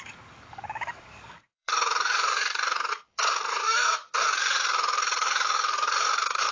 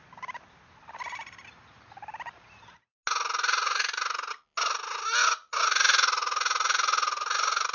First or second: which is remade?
first